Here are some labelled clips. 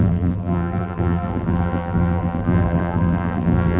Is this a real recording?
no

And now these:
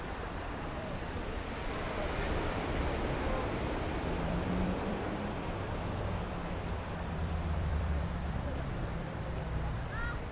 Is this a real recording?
no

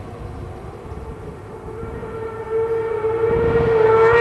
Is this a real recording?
yes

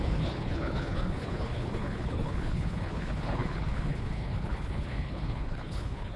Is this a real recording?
no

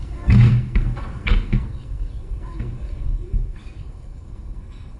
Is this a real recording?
no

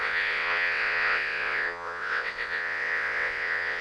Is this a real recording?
no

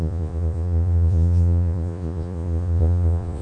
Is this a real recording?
no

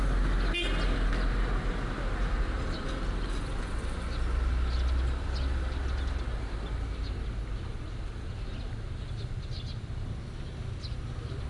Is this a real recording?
yes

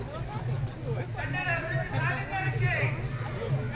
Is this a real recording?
yes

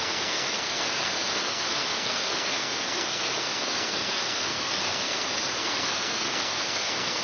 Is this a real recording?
no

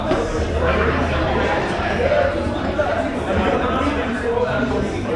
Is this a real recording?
no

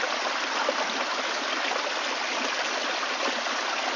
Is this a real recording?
yes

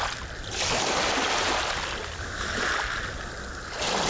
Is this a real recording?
yes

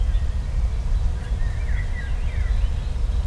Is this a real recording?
yes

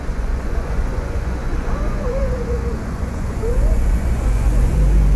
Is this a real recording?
no